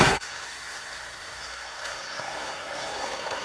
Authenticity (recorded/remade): remade